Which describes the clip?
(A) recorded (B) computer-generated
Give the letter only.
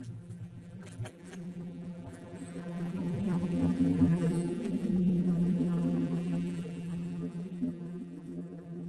B